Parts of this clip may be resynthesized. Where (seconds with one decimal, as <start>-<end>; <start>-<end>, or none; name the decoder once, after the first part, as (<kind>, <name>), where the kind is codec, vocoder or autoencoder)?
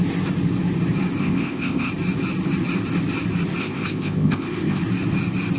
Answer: 1.2-1.9 (codec, ZipCodec); 3.6-4.8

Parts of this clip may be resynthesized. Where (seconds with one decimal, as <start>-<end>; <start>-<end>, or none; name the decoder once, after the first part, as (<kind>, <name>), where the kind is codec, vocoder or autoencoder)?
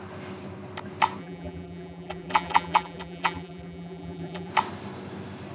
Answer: 1.2-4.5 (vocoder, BigVGAN v2)